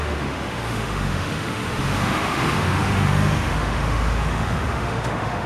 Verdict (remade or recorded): remade